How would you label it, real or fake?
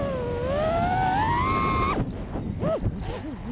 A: real